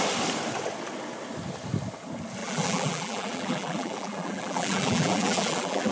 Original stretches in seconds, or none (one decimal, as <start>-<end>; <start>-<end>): 0.0-2.4